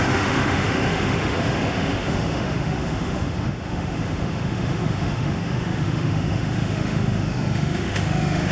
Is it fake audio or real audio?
fake